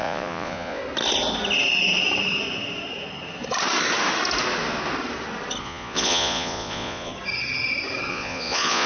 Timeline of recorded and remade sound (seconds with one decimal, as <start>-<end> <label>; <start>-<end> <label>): 0.0-0.8 remade; 0.8-5.6 recorded; 5.6-7.1 remade; 7.1-8.1 recorded; 8.1-8.9 remade